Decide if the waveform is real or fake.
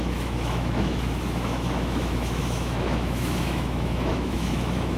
fake